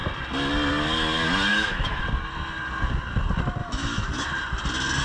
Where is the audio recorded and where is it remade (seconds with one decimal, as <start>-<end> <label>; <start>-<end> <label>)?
0.0-1.5 recorded; 1.5-2.0 remade; 2.0-3.6 recorded; 3.6-4.1 remade; 4.1-5.0 recorded